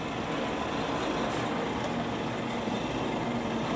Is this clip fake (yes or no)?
no